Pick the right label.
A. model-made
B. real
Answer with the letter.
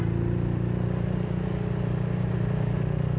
B